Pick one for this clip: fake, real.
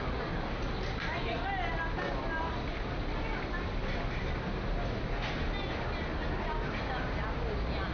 real